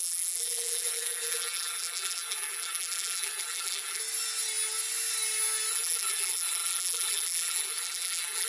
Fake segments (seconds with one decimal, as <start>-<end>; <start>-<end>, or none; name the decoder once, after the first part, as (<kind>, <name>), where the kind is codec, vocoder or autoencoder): 0.0-4.0 (vocoder, BigVGAN v2); 5.7-8.5